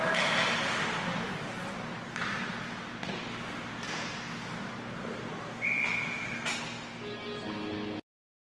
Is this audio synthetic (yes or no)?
no